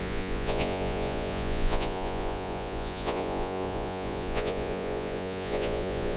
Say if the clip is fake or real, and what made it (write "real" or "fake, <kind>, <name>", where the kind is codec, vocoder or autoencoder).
fake, vocoder, Vocos